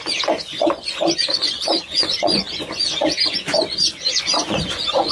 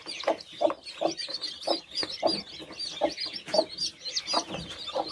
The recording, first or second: second